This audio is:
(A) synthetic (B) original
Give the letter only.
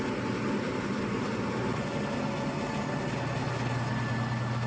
B